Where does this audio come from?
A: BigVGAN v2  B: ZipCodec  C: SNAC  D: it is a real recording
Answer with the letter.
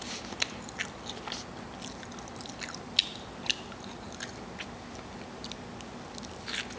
D